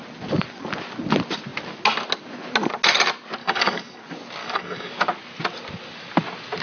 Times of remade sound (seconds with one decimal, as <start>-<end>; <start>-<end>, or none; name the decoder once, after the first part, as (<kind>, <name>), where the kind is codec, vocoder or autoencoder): 3.4-4.0 (codec, DAC); 4.4-4.9